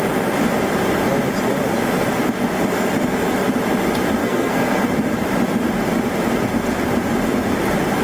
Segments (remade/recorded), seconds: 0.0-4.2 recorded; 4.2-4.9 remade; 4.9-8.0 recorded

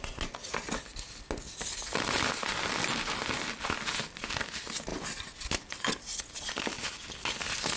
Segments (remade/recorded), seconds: 0.0-7.8 recorded

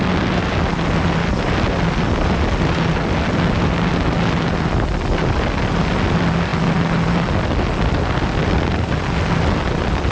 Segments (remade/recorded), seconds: 0.0-10.1 recorded